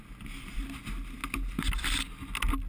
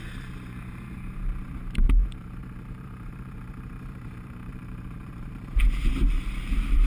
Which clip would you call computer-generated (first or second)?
second